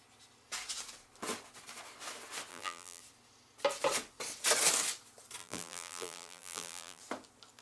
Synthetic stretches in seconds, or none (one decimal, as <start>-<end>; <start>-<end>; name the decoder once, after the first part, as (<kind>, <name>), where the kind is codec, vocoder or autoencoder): 2.5-3.0 (vocoder, BigVGAN v2); 5.4-7.0